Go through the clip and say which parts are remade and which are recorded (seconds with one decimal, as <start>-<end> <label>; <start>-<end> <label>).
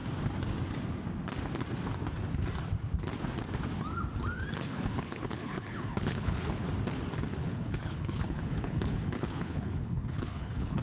0.0-4.5 recorded; 4.5-6.6 remade; 6.6-7.4 recorded; 7.4-10.8 remade